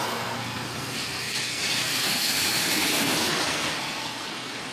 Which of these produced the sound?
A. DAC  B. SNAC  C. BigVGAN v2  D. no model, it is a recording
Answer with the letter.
B